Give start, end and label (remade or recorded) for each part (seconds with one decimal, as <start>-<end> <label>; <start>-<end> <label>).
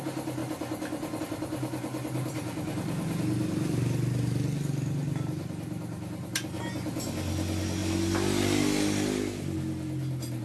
0.0-10.4 recorded